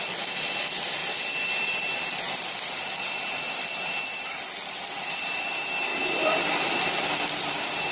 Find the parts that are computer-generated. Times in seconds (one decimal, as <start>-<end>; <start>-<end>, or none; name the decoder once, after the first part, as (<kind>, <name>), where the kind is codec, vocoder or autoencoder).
0.0-1.0 (vocoder, BigVGAN v2); 3.5-7.9